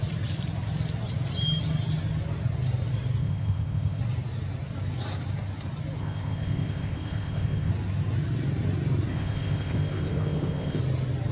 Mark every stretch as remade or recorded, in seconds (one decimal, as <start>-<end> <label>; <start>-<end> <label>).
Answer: 0.0-3.2 recorded; 3.2-4.0 remade; 4.0-6.0 recorded; 6.0-7.7 remade; 7.7-9.1 recorded; 9.1-10.8 remade; 10.8-11.3 recorded